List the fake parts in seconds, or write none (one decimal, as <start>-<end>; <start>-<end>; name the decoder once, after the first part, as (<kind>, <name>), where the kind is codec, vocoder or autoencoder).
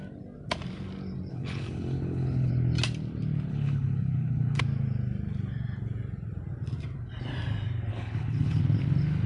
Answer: 1.3-2.5 (codec, HILCodec); 3.5-4.6; 7.9-8.6